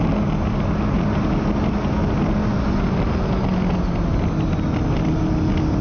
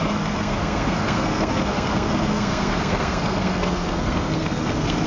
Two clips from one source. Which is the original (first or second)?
first